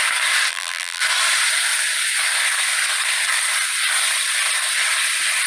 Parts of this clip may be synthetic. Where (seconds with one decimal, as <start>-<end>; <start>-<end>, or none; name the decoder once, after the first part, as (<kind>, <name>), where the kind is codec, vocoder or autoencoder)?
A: 0.5-1.0 (vocoder, BigVGAN v2)

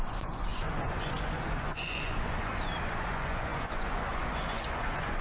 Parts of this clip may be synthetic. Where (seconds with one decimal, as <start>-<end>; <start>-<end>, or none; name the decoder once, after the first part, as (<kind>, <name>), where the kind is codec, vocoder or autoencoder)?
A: 0.0-5.2 (vocoder, Vocos)

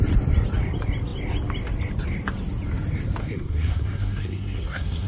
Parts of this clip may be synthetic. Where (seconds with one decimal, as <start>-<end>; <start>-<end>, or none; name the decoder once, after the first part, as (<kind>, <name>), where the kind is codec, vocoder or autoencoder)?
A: 3.2-5.1 (codec, SNAC)